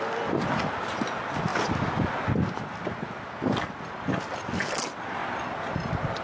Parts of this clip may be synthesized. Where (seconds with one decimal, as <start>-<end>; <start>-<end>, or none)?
none